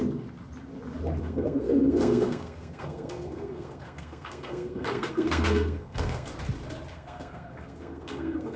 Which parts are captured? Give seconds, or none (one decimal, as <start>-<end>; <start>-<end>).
0.0-1.2; 6.3-6.9